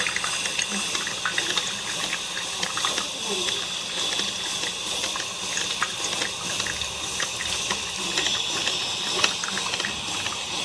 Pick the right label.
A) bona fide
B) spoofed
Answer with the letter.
A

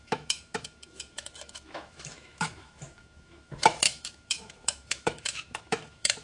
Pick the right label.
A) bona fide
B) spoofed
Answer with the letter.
B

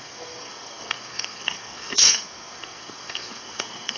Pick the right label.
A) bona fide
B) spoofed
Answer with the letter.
B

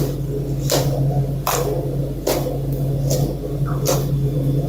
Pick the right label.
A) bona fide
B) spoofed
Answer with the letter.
A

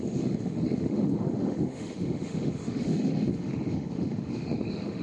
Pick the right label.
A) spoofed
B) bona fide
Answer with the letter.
A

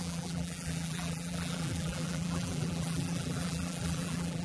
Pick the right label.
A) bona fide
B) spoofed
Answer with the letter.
B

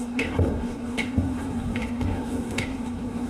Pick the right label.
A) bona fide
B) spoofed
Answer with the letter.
B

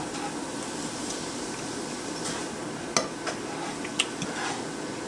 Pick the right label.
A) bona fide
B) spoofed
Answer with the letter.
A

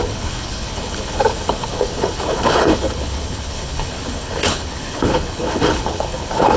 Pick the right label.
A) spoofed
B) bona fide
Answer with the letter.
A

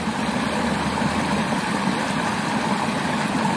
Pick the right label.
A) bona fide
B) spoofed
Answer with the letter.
A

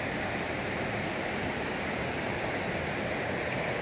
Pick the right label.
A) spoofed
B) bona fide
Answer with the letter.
B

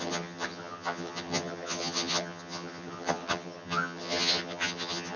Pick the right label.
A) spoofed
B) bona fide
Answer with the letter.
A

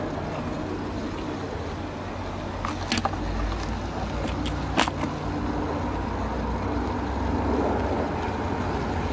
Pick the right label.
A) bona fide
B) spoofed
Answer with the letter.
A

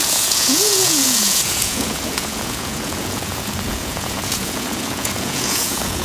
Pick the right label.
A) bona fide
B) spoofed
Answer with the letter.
B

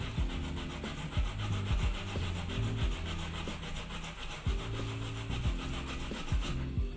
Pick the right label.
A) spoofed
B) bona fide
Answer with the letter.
B